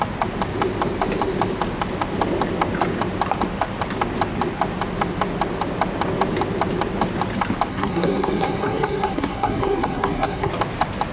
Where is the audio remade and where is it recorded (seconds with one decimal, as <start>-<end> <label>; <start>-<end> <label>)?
0.0-7.7 recorded; 7.7-10.5 remade; 10.5-11.1 recorded